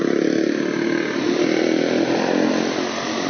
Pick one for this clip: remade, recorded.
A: recorded